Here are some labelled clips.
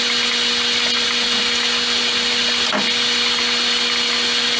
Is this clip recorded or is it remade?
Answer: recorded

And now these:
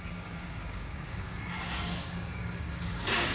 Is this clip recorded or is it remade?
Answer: remade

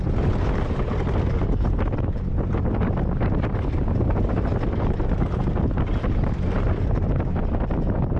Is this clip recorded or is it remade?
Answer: recorded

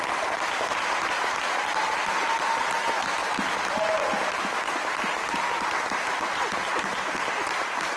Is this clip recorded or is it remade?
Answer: recorded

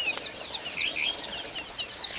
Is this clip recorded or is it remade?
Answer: recorded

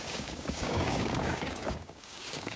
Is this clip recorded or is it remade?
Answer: remade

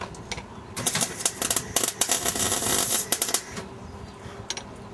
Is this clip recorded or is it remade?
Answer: recorded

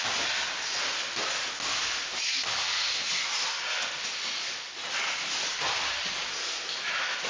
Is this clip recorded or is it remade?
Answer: recorded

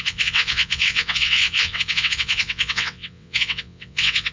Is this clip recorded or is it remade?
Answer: remade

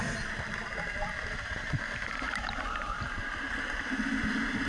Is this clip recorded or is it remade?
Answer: remade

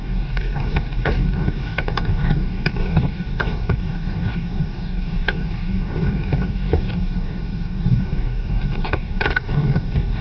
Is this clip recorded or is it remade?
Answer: remade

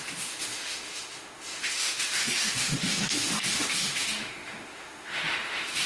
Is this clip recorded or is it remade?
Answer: remade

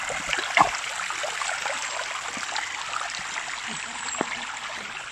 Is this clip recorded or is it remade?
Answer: recorded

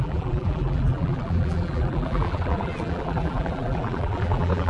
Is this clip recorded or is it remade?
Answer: remade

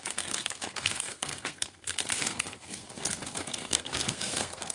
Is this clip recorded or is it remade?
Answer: remade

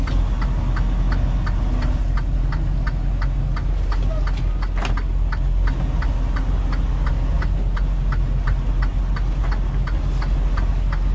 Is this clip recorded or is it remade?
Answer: recorded